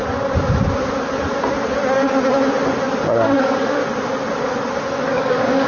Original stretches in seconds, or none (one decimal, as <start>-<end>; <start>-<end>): 0.0-3.4; 3.8-5.0